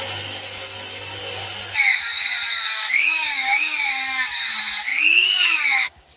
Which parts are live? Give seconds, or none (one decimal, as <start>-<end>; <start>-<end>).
0.0-1.9; 4.5-4.9

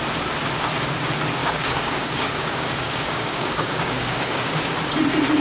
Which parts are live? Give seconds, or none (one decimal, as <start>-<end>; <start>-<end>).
0.0-1.4; 4.6-5.4

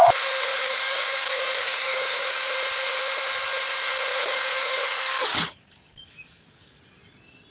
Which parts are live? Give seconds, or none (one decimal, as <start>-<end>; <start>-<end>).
0.0-0.5; 2.5-4.1; 4.8-5.3; 6.8-7.5

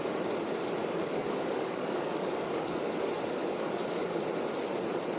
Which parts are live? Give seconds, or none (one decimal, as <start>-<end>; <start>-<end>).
0.0-0.8; 2.9-3.4; 4.3-5.2

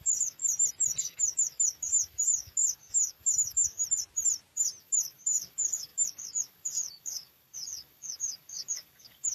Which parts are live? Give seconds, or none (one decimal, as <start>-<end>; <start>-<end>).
0.4-1.0; 3.8-4.8